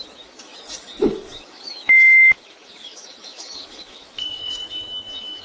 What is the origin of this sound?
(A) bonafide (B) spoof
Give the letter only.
B